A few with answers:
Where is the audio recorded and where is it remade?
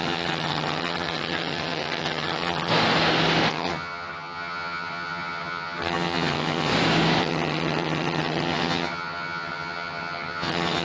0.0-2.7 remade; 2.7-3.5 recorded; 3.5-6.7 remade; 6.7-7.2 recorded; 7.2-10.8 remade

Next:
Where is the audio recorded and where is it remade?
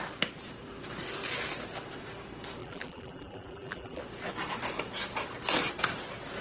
0.0-2.6 recorded; 2.6-4.0 remade; 4.0-6.4 recorded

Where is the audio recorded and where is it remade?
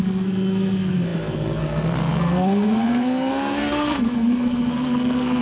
0.0-5.4 remade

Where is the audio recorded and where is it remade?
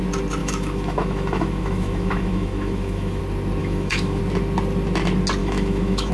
0.0-0.4 recorded; 0.4-3.2 remade; 3.2-3.6 recorded; 3.6-4.2 remade; 4.2-5.4 recorded; 5.4-6.1 remade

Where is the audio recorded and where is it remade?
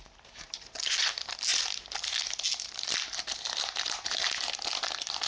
0.0-5.3 recorded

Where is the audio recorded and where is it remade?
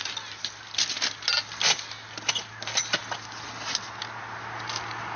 0.0-5.2 recorded